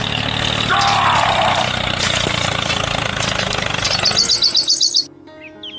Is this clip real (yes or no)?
yes